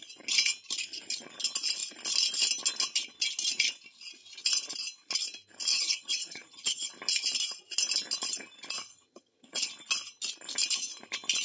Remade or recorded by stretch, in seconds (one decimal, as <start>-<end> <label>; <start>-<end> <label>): 0.0-5.7 recorded; 5.7-6.9 remade; 6.9-8.9 recorded; 8.9-9.7 remade; 9.7-11.4 recorded